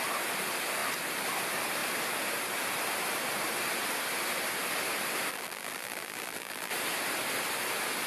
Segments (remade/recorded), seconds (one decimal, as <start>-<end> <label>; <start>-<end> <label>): 0.0-5.3 recorded; 5.3-6.7 remade; 6.7-8.1 recorded